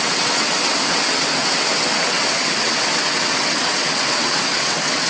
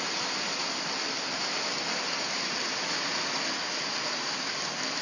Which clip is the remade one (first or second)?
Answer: first